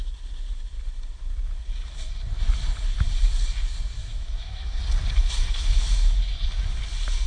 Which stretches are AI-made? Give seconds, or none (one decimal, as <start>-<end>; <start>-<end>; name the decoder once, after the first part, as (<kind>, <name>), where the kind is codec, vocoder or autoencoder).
4.0-4.8 (autoencoder, DAC-VAE); 5.4-6.2

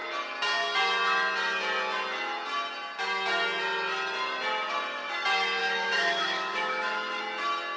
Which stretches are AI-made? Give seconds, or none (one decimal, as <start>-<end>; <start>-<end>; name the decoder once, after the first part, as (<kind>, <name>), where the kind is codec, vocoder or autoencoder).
5.6-7.2 (autoencoder, DAC-VAE)

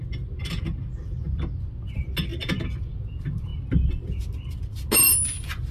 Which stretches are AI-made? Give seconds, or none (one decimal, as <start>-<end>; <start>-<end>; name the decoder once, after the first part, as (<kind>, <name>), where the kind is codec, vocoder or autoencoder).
none